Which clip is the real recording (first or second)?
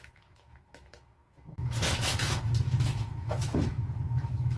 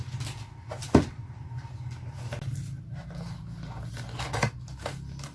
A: second